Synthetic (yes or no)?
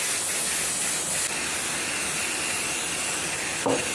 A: no